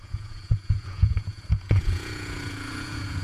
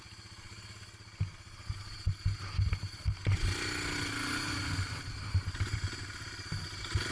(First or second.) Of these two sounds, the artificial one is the first